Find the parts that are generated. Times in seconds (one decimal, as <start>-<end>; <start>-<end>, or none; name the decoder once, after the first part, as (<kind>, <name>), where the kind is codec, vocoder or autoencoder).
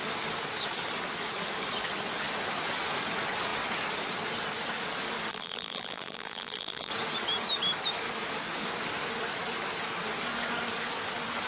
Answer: 5.3-6.9 (vocoder, BigVGAN v2)